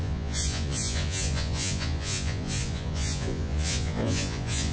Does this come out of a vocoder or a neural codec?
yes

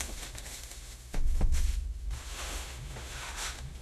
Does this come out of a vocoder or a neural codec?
yes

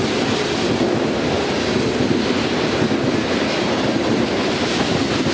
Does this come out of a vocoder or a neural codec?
no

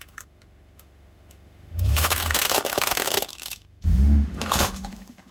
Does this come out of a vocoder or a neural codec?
yes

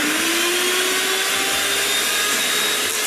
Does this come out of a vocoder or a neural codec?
no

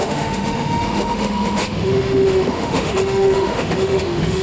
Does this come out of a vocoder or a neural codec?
yes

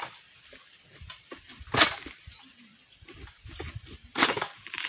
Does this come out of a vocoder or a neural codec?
yes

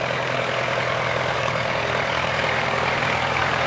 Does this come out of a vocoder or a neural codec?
yes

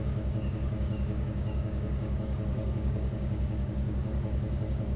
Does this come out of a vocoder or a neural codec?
yes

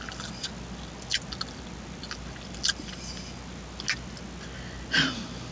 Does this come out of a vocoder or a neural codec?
no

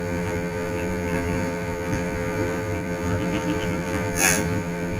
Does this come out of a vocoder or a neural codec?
yes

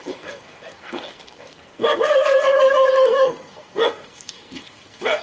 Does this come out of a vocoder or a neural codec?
yes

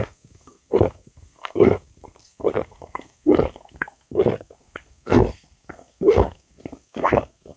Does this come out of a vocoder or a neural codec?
yes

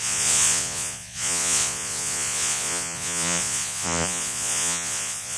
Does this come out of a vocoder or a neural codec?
yes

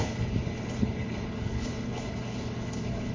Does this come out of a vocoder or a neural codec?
yes